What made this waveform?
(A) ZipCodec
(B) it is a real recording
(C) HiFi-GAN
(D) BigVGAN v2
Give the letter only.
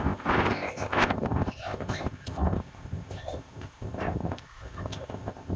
A